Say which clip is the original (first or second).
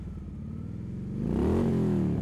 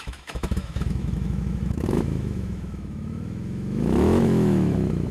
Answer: first